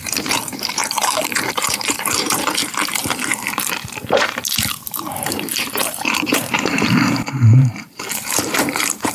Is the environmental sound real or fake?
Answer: fake